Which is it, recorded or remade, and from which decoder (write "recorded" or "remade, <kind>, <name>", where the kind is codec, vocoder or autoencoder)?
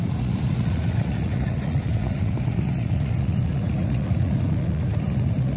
remade, vocoder, Vocos